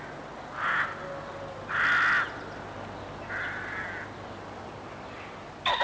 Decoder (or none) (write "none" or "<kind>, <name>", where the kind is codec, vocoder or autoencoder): none